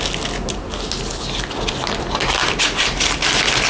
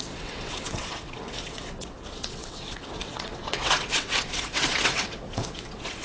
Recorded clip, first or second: first